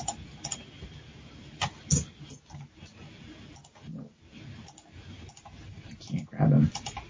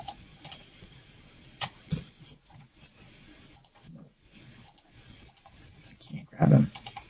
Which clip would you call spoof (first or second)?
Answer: second